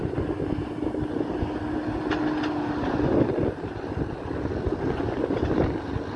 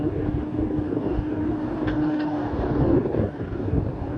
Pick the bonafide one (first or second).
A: first